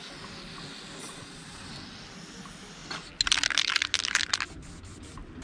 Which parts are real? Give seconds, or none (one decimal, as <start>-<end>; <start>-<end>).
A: 0.0-1.0; 1.7-5.4